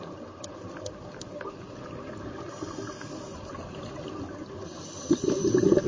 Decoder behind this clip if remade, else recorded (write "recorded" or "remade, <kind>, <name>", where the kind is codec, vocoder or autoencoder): recorded